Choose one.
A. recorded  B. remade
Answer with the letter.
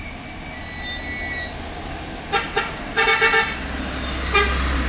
A